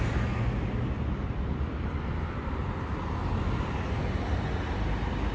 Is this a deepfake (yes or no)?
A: no